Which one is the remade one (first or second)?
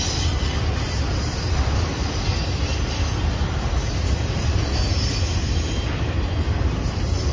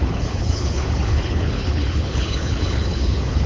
second